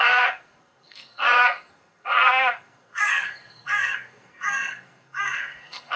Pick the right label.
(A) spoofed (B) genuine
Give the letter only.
A